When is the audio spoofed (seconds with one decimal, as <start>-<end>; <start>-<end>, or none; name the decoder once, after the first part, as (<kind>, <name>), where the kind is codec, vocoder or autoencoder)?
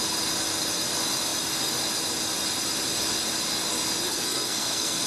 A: 4.1-5.1 (codec, SNAC)